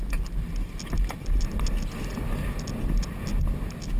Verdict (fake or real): real